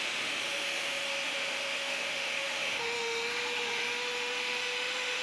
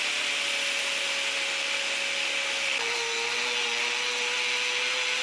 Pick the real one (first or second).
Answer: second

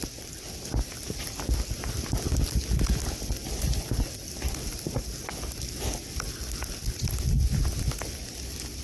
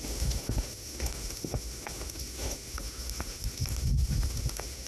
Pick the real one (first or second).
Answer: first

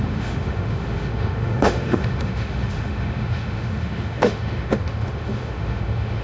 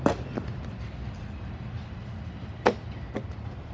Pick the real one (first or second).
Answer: second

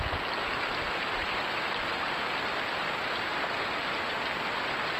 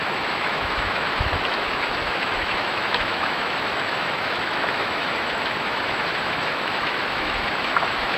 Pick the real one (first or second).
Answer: first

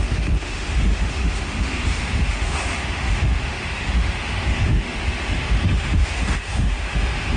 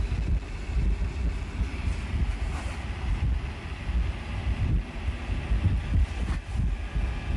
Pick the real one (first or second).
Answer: second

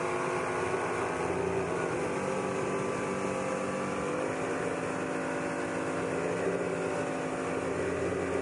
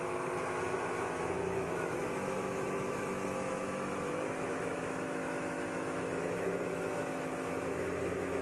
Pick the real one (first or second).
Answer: first